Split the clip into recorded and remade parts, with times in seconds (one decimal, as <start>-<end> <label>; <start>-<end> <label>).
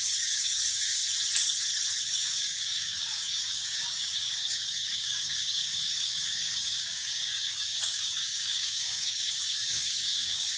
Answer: 0.0-1.0 remade; 1.0-2.0 recorded; 2.0-10.6 remade